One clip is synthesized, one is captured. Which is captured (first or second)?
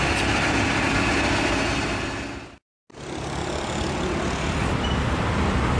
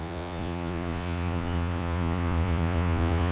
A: first